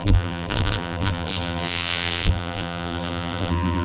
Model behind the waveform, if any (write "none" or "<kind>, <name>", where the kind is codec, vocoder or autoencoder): vocoder, BigVGAN v2